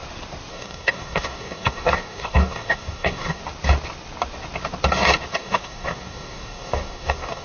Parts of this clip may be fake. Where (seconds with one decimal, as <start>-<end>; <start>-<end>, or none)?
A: 0.5-3.4; 5.3-7.4